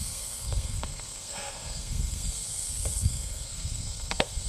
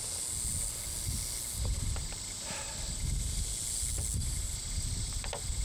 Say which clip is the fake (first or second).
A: first